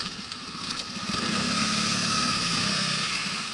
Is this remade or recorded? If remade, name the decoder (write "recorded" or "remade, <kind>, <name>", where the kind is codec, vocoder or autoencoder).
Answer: remade, codec, SNAC